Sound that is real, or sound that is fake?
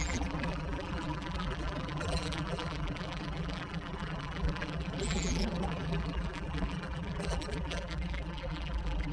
fake